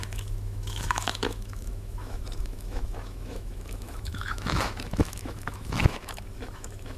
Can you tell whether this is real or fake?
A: fake